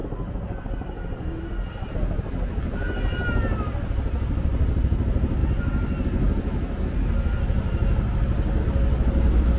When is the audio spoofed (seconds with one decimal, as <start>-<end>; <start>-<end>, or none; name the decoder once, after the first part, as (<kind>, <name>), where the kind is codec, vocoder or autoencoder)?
none